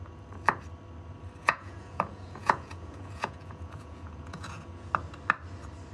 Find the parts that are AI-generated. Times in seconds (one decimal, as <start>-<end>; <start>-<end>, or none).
1.4-4.9

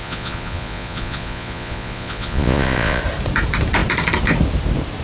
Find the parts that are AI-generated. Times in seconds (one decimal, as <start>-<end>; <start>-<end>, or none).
0.0-3.0

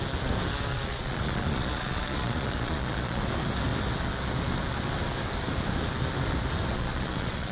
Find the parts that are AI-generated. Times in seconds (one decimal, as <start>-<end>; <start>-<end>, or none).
0.7-3.2; 6.7-7.5

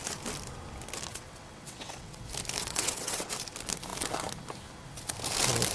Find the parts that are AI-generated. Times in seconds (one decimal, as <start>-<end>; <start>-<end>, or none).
1.1-2.2; 2.6-3.3

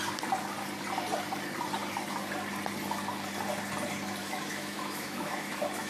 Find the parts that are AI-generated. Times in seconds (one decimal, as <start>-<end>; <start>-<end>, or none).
4.2-5.9